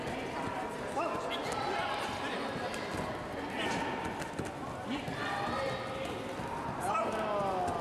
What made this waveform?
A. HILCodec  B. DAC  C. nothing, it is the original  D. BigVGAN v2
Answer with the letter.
C